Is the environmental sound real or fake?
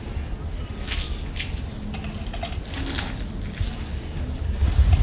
real